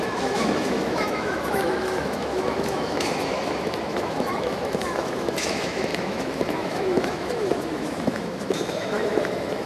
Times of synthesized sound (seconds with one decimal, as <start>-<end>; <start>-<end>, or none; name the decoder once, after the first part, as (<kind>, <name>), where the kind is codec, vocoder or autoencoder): 0.0-9.7 (autoencoder, DAC-VAE)